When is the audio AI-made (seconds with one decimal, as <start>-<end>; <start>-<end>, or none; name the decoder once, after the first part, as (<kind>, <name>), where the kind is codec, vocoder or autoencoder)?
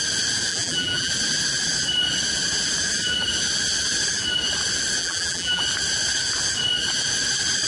0.5-1.1 (vocoder, BigVGAN v2); 5.0-5.6